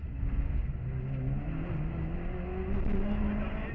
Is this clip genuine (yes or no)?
yes